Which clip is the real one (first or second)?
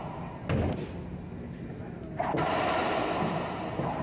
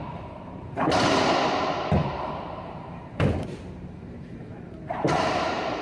first